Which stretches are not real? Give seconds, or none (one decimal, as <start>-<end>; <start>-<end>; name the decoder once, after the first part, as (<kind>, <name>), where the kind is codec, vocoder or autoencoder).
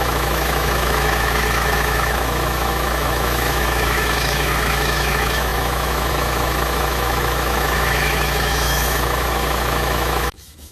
0.0-10.7 (autoencoder, DAC-VAE)